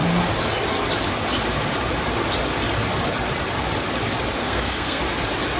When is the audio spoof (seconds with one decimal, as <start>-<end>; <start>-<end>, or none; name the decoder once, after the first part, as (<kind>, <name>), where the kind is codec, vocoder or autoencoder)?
4.4-5.0 (codec, SNAC)